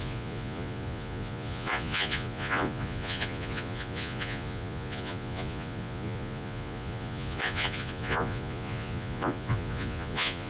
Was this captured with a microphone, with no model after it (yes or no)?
no